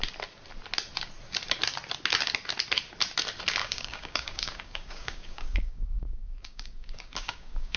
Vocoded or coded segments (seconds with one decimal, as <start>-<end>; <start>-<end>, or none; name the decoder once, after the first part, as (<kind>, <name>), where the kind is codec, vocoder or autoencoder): 3.6-7.8 (codec, DAC)